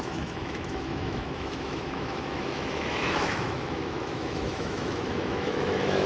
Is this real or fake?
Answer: fake